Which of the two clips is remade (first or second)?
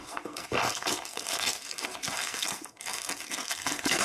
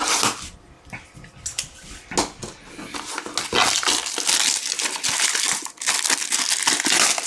first